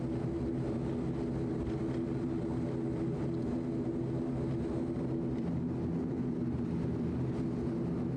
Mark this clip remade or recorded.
recorded